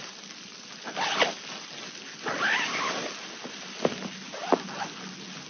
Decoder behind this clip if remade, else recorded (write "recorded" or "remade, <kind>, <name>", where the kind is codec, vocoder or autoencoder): recorded